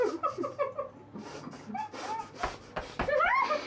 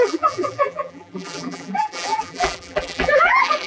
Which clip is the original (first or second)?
first